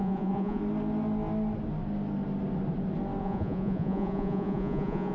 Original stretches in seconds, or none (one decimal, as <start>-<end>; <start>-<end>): 0.6-3.2